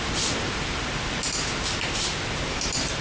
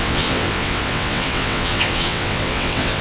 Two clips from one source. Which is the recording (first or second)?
first